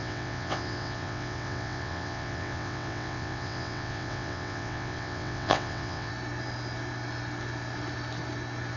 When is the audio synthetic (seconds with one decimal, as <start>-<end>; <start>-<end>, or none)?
0.0-6.1